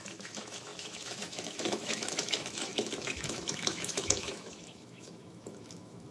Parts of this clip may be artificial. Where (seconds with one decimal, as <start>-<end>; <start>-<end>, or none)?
0.0-6.1